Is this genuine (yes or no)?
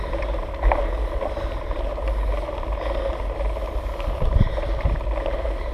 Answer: yes